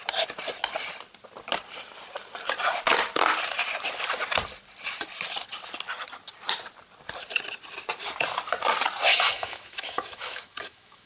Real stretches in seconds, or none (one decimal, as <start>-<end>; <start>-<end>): 0.0-9.1